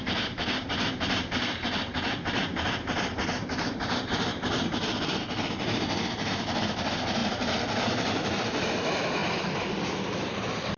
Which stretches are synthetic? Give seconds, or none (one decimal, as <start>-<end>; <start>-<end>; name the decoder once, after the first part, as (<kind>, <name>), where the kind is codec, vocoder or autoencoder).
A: 0.0-9.2 (vocoder, BigVGAN v2); 9.9-10.8